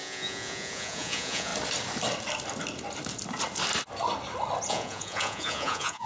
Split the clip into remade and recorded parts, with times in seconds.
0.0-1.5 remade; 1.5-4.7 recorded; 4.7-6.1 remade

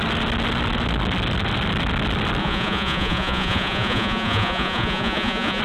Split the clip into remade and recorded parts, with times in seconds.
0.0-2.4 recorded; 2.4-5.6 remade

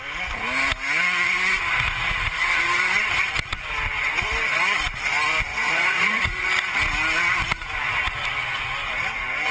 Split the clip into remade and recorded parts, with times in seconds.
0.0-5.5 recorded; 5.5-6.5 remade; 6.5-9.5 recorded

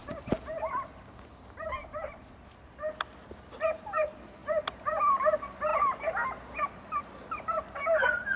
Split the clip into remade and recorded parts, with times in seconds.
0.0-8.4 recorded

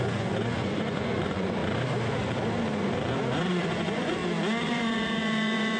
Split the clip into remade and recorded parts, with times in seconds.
0.0-1.6 remade; 1.6-3.5 recorded; 3.5-4.2 remade; 4.2-4.7 recorded; 4.7-5.8 remade

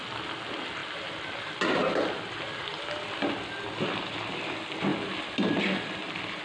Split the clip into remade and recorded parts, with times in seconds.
0.0-6.4 recorded

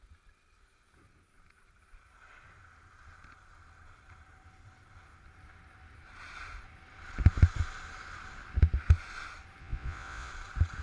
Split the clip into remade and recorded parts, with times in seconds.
0.0-9.6 recorded; 9.6-10.3 remade; 10.3-10.8 recorded